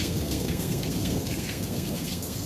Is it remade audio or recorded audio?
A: remade